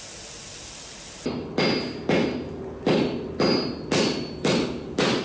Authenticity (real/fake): real